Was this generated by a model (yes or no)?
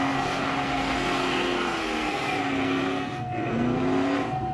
yes